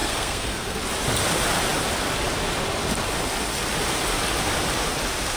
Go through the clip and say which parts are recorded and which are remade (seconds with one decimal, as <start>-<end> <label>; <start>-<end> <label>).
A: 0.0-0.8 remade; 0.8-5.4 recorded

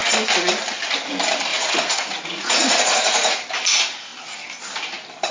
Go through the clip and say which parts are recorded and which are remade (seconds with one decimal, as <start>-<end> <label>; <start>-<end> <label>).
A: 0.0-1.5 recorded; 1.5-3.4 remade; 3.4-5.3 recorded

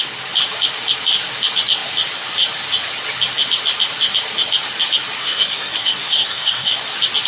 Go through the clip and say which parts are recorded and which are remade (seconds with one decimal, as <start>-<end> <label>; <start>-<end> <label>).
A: 0.0-5.2 recorded; 5.2-6.7 remade; 6.7-7.3 recorded

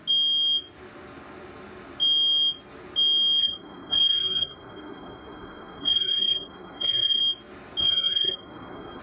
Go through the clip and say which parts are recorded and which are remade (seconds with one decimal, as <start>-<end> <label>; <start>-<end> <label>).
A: 0.0-3.4 recorded; 3.4-7.2 remade; 7.2-7.8 recorded; 7.8-9.0 remade

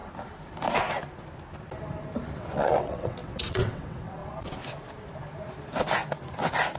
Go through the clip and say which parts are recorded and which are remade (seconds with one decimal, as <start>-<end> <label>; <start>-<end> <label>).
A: 0.0-2.4 recorded; 2.4-4.2 remade; 4.2-6.8 recorded

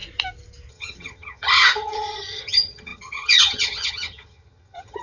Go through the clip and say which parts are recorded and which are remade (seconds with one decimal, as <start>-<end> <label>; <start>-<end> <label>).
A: 0.0-0.7 recorded; 0.7-5.0 remade

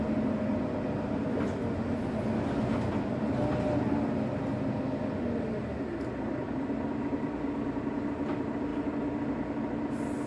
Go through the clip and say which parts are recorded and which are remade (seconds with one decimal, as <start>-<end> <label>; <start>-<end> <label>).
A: 0.0-10.3 recorded